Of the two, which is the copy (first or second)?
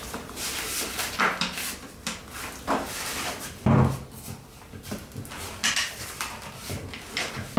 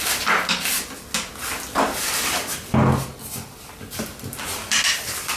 first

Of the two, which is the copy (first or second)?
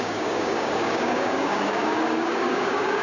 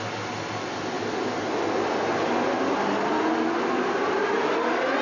first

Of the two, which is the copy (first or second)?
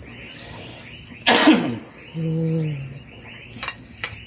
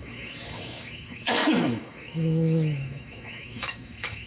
second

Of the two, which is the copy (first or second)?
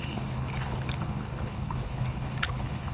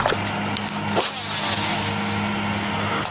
first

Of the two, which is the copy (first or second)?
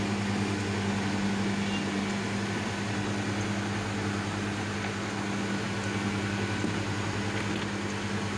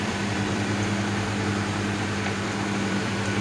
second